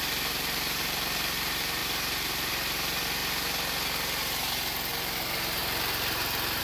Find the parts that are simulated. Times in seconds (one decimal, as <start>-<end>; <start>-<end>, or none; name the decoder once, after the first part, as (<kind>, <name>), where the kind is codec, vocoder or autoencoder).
0.0-3.2 (vocoder, BigVGAN v2); 4.9-5.6